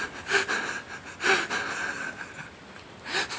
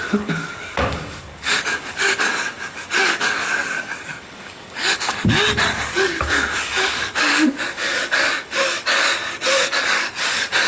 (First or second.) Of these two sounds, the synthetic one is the second